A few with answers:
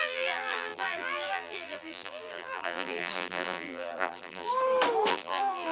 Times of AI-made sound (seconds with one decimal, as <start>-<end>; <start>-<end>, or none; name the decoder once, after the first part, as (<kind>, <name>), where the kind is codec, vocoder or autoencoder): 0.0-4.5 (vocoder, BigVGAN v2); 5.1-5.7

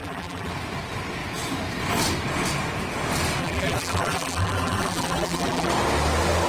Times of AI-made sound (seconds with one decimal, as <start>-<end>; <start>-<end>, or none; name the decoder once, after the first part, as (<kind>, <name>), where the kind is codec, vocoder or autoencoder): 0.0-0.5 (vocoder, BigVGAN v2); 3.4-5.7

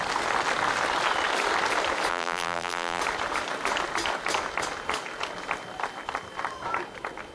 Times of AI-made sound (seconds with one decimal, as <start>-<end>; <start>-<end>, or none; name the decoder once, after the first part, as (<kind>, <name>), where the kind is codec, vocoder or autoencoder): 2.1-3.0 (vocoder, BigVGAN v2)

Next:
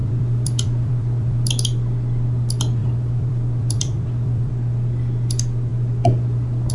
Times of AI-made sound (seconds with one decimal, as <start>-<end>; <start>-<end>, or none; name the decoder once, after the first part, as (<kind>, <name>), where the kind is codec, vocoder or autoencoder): 0.0-1.5 (vocoder, BigVGAN v2); 2.8-4.5

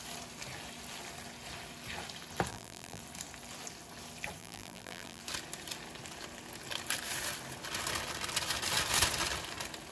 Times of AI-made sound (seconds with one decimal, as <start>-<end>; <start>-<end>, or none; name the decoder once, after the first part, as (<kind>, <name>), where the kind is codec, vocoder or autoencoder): 2.5-3.0 (vocoder, BigVGAN v2); 4.4-5.2